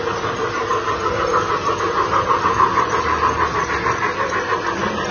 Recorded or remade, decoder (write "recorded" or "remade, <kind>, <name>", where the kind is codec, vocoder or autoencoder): recorded